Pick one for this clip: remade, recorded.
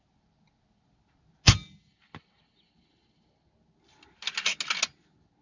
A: recorded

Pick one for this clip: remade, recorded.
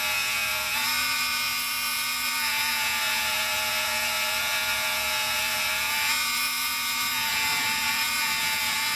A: remade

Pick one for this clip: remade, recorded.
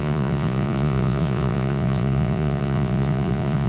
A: remade